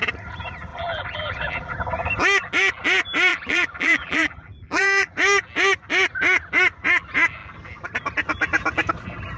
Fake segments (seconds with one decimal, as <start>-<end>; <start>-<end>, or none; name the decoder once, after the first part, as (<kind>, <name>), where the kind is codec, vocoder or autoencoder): 0.7-1.7 (vocoder, BigVGAN v2); 3.3-5.1

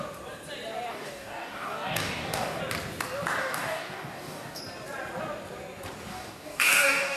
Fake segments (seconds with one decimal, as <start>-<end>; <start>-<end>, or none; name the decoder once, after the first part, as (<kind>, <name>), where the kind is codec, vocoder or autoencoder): 0.9-2.6 (codec, DAC); 3.4-4.6; 6.1-7.2

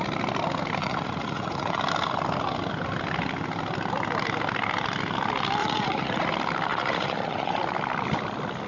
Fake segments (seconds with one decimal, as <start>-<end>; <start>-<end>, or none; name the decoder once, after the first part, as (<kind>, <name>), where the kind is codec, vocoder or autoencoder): 0.8-1.8 (vocoder, Vocos); 5.6-6.3; 6.7-7.6

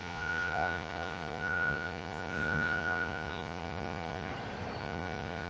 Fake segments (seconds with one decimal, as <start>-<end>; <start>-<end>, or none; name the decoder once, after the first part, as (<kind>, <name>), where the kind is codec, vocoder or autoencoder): 0.0-4.3 (vocoder, Vocos); 4.8-5.5

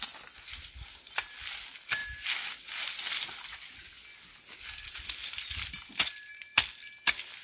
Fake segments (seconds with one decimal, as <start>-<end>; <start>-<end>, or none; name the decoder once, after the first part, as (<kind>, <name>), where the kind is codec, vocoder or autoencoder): none

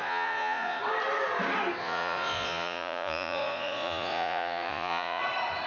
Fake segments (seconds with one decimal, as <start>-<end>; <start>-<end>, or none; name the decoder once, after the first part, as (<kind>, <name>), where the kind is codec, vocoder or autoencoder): 0.0-0.8 (vocoder, Vocos); 1.8-5.2